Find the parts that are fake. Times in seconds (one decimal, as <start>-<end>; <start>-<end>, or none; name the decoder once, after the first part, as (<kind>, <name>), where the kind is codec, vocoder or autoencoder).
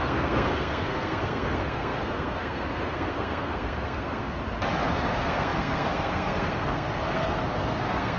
0.0-4.4 (codec, SNAC); 4.9-8.2